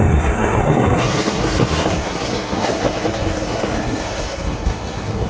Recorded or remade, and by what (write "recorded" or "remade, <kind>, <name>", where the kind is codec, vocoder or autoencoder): remade, codec, SNAC